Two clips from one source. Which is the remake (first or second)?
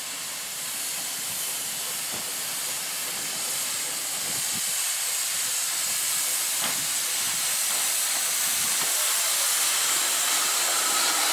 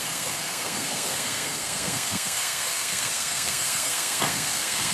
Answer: second